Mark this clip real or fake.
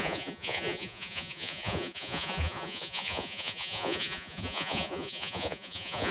fake